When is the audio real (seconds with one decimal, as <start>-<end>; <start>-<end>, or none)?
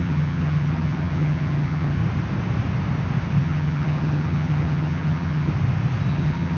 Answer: 2.0-3.4; 5.5-6.1